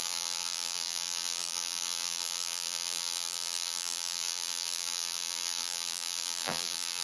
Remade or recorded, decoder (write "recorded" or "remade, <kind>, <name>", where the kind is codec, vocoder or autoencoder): remade, vocoder, BigVGAN v2